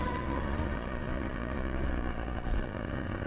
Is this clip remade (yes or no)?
yes